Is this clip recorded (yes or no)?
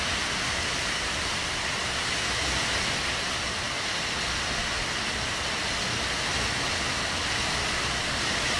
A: yes